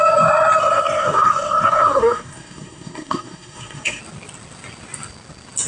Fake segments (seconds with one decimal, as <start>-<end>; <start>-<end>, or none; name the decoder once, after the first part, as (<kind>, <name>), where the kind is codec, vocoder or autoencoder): 0.6-4.0 (codec, SNAC)